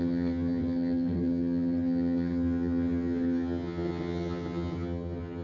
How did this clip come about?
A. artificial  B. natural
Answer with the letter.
A